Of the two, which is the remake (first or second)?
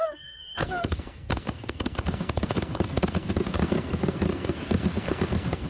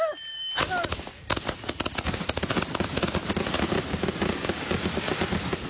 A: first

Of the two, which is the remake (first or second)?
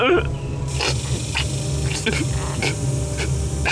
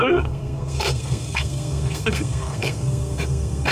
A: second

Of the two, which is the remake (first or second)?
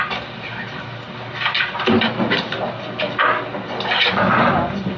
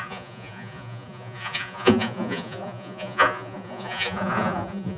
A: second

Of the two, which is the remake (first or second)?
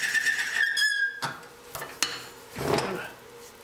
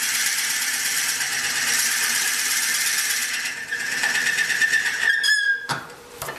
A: second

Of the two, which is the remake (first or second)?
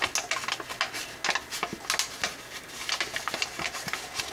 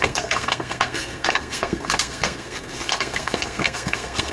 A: second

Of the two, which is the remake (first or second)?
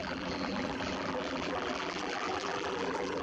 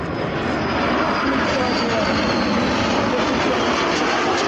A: first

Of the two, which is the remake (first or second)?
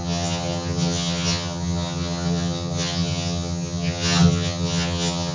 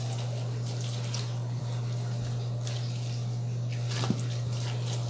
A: first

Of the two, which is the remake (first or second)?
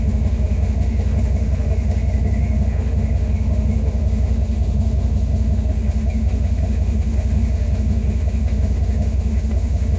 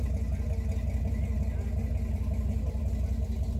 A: first